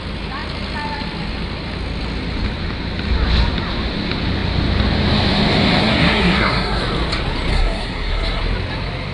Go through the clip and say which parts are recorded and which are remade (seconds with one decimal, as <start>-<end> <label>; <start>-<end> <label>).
0.0-5.8 recorded; 5.8-6.8 remade; 6.8-7.5 recorded; 7.5-8.4 remade; 8.4-9.1 recorded